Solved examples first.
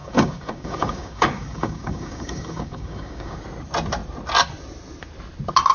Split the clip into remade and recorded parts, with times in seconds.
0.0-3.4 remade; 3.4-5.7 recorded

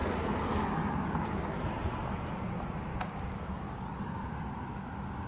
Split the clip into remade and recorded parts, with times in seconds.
0.0-2.9 recorded; 2.9-3.8 remade; 3.8-5.3 recorded

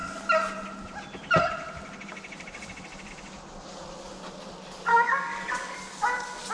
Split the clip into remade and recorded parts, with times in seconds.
0.0-4.9 recorded; 4.9-6.5 remade

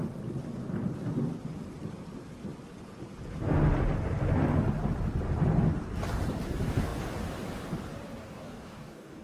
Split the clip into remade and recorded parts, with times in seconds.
0.0-8.2 recorded; 8.2-9.2 remade